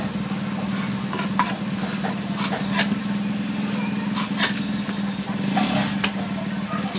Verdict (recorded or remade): recorded